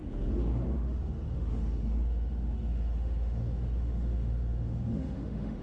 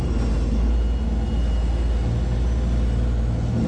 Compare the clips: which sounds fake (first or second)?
first